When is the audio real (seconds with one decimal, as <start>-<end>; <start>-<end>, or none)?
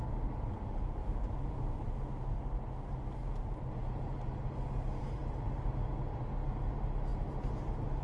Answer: 0.0-1.0; 1.9-3.2; 5.0-8.0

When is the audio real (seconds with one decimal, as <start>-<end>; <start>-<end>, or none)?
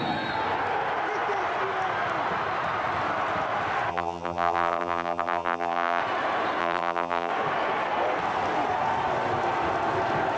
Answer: 0.0-3.9; 6.0-6.6; 7.3-10.4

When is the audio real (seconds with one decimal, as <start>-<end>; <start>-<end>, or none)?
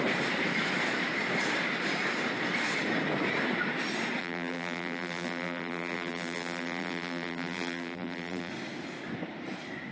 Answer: 0.0-4.2; 8.5-9.9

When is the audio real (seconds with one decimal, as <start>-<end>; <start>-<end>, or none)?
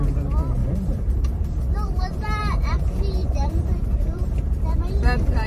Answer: 0.0-0.6; 2.4-3.2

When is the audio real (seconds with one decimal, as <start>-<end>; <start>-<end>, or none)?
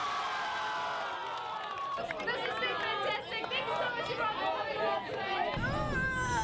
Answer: 0.0-6.4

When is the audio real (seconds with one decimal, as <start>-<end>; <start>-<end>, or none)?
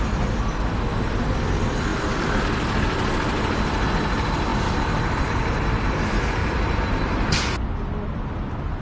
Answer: 0.0-1.9; 2.4-6.4; 7.1-8.8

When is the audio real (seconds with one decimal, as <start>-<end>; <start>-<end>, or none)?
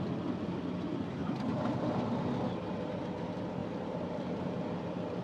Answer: 0.0-1.2; 2.0-3.6; 4.6-5.2